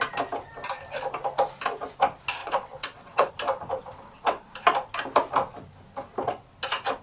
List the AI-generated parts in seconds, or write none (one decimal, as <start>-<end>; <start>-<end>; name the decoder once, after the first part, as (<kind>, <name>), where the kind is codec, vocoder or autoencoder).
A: 2.4-3.3 (vocoder, WaveNeXt); 3.8-4.4